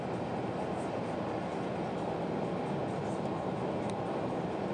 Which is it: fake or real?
real